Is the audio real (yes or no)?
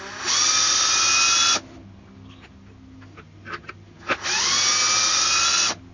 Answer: yes